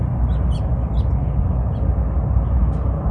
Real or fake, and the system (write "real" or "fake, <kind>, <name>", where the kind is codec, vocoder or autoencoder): real